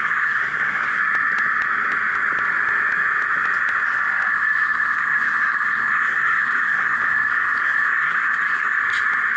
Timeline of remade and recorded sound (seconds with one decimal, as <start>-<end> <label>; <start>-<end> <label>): 0.0-1.0 remade; 1.0-4.3 recorded; 4.3-8.8 remade; 8.8-9.4 recorded